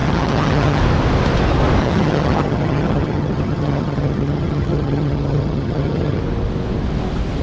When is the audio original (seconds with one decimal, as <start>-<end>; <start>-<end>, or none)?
0.8-1.8; 6.2-7.4